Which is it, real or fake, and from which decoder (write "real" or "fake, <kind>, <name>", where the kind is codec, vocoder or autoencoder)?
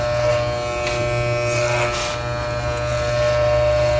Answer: real